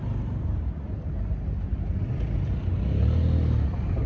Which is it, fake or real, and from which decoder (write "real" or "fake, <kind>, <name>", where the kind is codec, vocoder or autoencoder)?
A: real